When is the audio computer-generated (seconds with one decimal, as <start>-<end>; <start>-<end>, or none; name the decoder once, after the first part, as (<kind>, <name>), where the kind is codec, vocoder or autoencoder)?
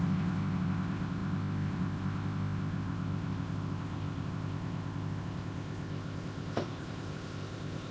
0.0-7.9 (codec, ZipCodec)